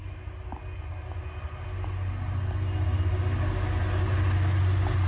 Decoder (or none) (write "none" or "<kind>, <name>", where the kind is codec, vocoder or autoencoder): none